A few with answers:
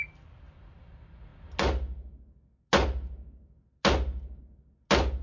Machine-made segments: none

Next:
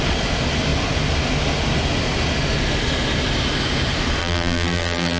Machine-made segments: 4.2-5.2 (vocoder, BigVGAN v2)

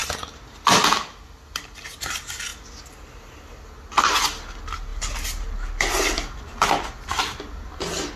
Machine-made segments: none

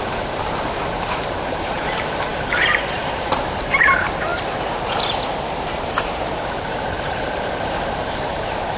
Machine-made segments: 0.0-8.8 (vocoder, BigVGAN v2)

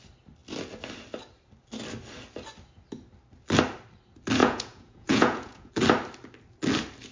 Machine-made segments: 4.4-5.7 (vocoder, Vocos)

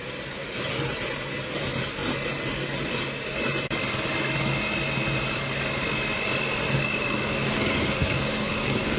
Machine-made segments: 6.8-9.0 (codec, DAC)

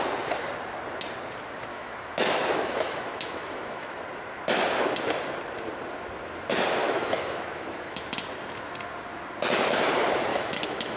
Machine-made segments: 1.7-3.9 (autoencoder, DAC-VAE); 6.8-8.0; 10.3-11.0